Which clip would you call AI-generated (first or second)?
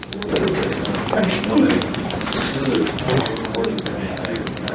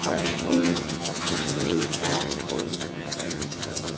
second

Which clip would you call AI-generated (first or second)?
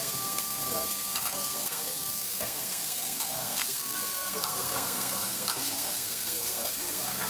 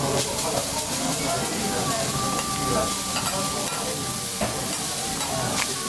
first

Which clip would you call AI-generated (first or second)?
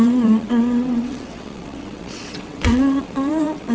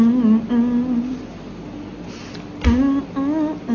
first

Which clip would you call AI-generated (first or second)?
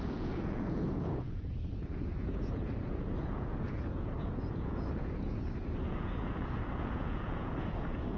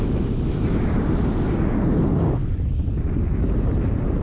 first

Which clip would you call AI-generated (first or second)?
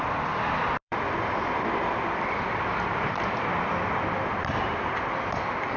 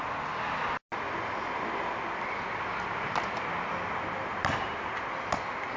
first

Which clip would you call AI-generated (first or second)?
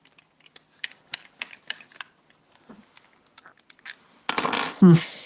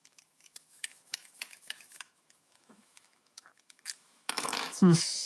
second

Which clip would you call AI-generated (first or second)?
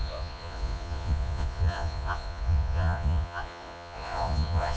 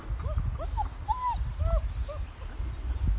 first